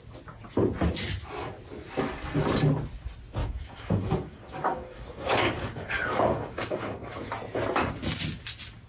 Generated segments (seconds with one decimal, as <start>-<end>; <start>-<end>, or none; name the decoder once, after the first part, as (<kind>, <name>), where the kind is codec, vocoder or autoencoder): 3.4-7.3 (codec, DAC)